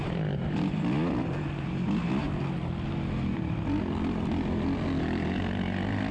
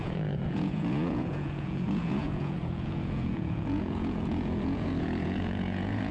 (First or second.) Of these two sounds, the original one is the first